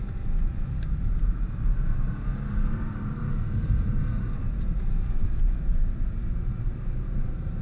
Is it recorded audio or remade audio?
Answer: remade